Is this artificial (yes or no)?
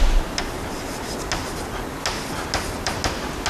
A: no